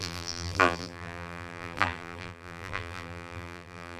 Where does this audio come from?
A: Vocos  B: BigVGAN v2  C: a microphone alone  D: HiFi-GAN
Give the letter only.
B